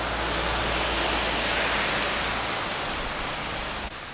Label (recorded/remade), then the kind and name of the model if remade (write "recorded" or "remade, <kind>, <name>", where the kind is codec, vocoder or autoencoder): recorded